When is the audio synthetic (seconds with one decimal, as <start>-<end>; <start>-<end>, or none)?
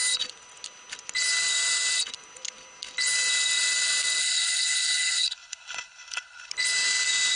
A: 4.2-6.5